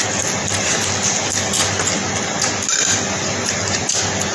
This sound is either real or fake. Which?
real